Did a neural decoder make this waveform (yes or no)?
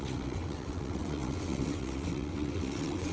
yes